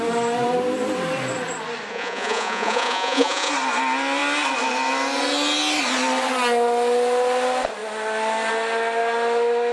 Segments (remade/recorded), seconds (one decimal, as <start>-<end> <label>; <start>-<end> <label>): 0.0-1.9 recorded; 1.9-3.5 remade; 3.5-9.7 recorded